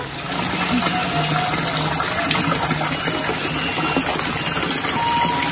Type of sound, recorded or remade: recorded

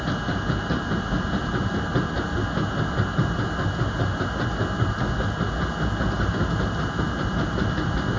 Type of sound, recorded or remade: recorded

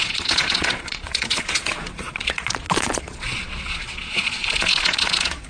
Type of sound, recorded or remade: remade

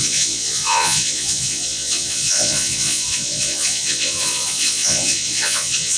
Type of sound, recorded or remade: remade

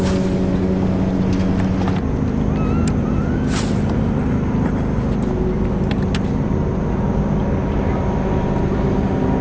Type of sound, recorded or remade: recorded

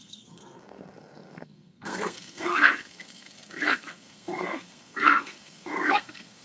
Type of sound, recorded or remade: remade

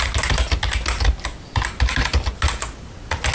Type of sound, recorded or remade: recorded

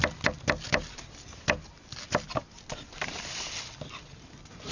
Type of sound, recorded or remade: recorded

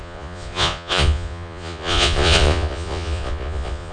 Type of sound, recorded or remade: remade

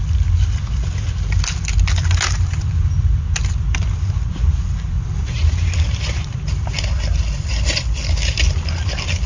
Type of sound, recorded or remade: recorded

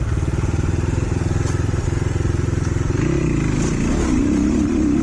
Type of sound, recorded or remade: recorded